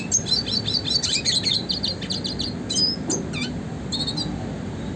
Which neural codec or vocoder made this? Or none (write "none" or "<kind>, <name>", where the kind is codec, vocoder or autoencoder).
none